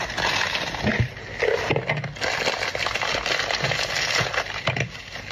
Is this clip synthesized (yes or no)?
no